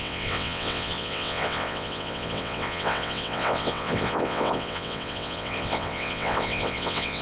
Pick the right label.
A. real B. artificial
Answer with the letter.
B